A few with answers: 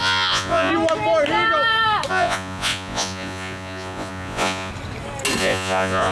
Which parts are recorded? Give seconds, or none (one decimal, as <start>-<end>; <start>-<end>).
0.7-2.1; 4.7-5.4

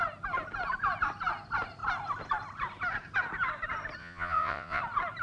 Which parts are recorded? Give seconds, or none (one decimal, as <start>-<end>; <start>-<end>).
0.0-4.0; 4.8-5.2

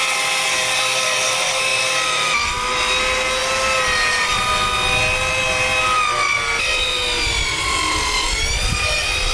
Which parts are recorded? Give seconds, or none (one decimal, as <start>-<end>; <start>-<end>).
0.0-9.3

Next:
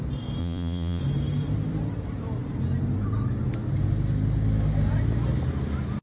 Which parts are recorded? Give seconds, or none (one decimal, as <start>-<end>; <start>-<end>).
0.0-0.4; 1.0-6.0

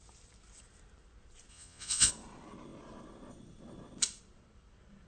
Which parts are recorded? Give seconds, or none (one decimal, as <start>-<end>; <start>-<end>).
0.0-1.5; 2.1-5.1

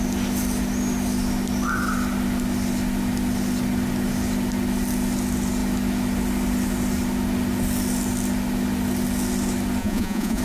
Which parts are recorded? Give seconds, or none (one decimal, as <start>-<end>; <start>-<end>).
0.0-9.8